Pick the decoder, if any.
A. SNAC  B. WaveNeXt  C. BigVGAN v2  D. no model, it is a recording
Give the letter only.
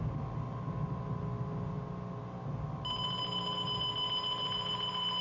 D